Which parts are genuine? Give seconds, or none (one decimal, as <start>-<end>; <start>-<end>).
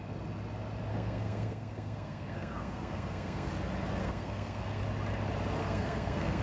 0.0-0.9; 3.5-4.0; 4.8-5.6